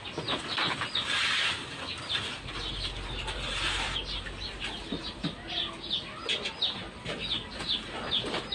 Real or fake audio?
real